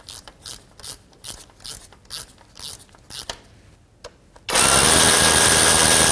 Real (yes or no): yes